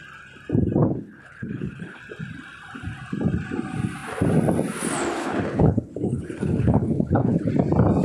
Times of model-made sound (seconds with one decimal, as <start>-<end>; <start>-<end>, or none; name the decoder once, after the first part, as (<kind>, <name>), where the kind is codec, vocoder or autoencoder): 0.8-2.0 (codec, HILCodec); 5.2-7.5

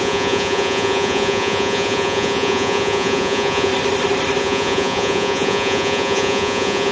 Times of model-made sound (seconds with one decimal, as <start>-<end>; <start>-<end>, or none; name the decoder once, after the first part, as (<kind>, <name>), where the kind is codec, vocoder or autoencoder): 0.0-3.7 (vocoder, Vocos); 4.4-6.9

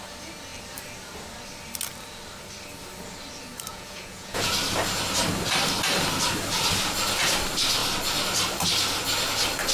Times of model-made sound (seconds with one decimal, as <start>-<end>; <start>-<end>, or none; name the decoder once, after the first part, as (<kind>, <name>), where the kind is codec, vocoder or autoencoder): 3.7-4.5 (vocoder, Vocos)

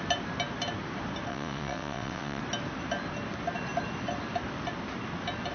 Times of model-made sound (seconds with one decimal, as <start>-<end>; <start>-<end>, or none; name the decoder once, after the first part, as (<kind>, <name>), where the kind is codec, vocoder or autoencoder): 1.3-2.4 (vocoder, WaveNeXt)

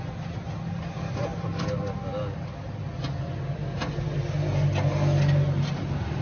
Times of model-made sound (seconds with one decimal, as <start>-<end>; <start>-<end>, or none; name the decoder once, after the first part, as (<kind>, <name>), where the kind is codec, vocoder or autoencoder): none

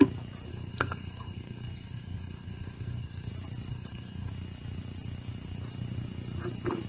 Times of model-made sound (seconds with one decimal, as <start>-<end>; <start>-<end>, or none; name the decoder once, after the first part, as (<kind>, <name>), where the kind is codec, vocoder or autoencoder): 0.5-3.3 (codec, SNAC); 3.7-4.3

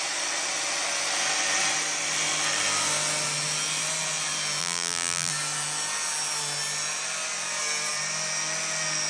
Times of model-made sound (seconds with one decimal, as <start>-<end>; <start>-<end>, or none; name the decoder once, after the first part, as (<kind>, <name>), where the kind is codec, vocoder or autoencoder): 4.6-5.3 (vocoder, BigVGAN v2)